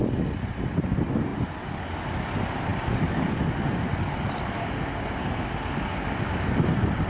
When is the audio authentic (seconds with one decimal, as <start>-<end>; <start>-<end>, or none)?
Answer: 0.0-7.1

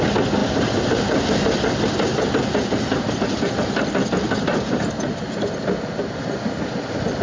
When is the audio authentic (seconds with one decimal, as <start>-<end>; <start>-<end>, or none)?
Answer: 0.0-7.2

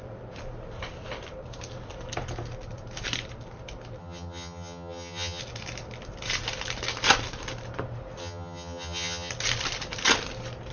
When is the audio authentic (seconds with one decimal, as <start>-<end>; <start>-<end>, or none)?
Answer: 0.0-4.0; 5.4-8.2; 9.3-10.7

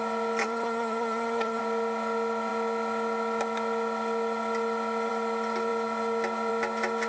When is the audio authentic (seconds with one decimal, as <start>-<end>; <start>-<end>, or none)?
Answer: 0.0-0.4; 1.6-7.1

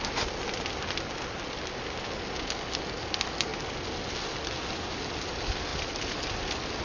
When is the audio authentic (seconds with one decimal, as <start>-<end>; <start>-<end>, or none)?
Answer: 0.0-6.8

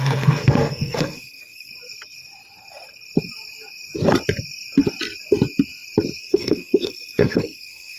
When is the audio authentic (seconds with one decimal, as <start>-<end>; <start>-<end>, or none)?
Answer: 1.7-6.2